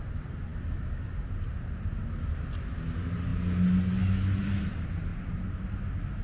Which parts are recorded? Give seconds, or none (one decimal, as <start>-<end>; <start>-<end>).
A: 0.0-6.2